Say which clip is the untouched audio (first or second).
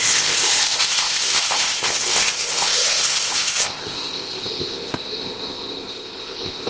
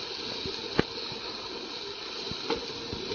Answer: second